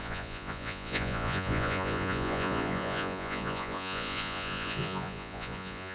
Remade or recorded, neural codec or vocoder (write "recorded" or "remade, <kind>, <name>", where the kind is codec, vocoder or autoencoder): remade, vocoder, Vocos